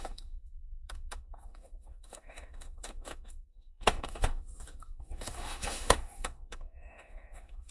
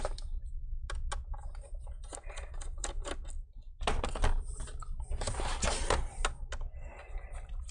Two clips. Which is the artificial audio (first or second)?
first